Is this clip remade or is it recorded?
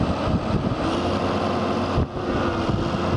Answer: recorded